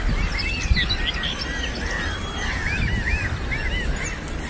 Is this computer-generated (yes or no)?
no